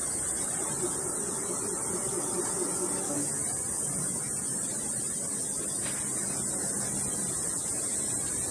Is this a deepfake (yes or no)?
no